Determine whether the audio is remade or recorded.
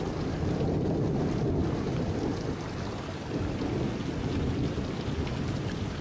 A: recorded